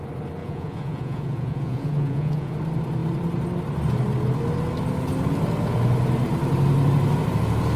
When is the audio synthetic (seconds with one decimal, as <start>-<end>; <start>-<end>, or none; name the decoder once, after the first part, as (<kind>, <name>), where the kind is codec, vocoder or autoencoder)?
0.4-2.5 (vocoder, Vocos)